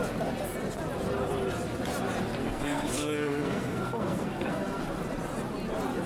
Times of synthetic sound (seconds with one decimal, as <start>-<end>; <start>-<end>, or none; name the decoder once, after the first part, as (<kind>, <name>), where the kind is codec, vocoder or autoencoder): 2.4-4.8 (codec, SNAC)